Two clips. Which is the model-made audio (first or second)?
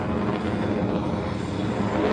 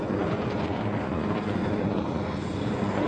second